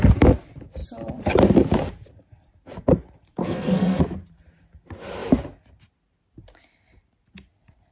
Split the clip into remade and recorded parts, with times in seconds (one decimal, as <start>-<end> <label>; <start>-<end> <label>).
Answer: 0.0-3.4 recorded; 3.4-4.0 remade; 4.0-7.9 recorded